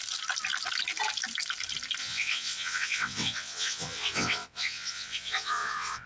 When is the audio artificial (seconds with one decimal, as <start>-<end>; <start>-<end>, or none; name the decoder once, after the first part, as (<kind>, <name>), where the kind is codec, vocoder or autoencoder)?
2.0-6.1 (vocoder, WaveNeXt)